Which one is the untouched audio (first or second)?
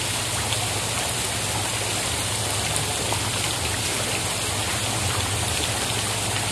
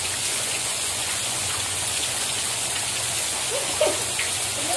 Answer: first